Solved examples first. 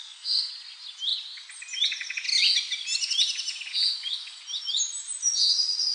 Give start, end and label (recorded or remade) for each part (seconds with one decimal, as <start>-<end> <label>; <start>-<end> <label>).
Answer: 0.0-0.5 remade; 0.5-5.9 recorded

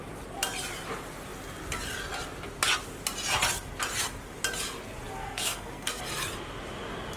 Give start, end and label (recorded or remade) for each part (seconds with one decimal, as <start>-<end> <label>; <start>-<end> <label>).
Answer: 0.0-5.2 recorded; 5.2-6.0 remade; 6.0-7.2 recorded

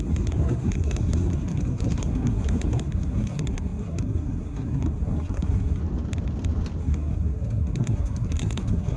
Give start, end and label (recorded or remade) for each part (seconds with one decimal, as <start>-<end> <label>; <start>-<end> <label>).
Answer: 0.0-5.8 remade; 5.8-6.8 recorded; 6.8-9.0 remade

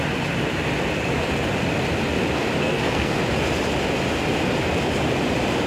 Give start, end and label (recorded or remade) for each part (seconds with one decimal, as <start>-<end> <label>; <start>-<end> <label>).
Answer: 0.0-2.6 recorded; 2.6-3.2 remade; 3.2-5.7 recorded